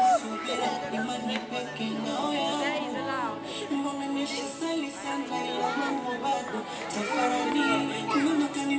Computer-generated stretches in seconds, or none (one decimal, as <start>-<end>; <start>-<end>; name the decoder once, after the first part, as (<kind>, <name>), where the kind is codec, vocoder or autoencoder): none